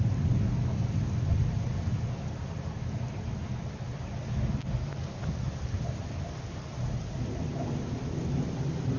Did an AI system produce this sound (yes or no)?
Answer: no